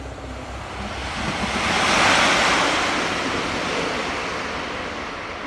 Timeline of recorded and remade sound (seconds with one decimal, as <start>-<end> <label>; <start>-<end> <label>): 0.0-5.5 recorded